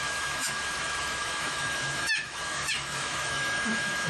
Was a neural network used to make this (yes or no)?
yes